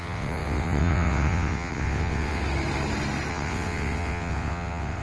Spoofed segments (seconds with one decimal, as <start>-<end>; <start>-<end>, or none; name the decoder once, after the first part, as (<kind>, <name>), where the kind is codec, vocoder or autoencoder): 0.0-2.4 (vocoder, WaveNeXt); 3.3-5.0